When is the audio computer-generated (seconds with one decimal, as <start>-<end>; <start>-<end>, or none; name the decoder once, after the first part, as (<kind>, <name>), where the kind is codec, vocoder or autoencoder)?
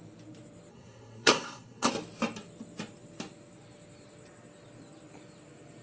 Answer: 0.7-1.9 (codec, SNAC)